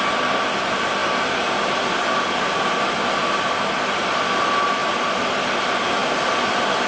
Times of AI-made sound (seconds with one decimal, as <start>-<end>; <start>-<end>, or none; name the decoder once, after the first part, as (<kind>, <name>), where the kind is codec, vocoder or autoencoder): 1.0-1.9 (vocoder, BigVGAN v2); 4.8-5.6